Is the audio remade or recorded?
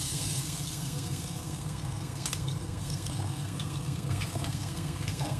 remade